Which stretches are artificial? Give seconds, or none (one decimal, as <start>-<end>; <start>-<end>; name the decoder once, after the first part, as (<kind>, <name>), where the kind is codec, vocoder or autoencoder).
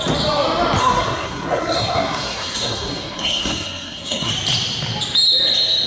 0.8-4.3 (codec, SNAC)